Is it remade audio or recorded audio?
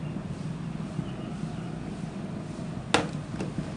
recorded